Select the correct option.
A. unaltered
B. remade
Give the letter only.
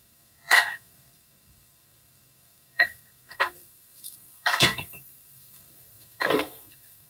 B